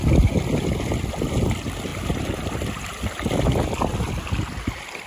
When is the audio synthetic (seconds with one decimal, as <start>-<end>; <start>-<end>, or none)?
1.9-5.1